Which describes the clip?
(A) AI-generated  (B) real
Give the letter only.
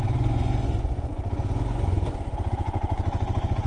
A